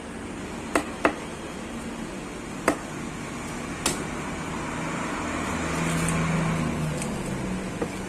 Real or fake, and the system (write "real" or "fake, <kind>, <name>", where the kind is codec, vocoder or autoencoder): real